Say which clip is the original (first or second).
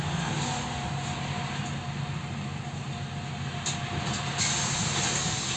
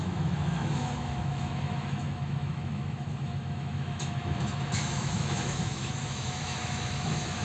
first